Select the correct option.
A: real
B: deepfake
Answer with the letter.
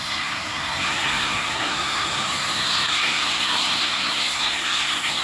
B